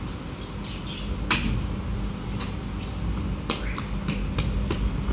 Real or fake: real